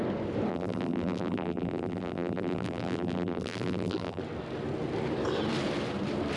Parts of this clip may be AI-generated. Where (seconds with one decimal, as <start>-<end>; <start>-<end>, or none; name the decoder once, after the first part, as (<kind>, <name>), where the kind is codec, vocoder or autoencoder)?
0.5-4.2 (vocoder, BigVGAN v2)